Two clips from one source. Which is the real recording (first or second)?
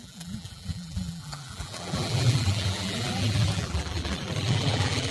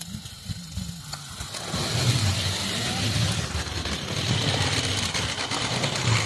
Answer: second